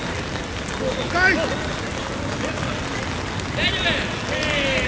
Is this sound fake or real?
real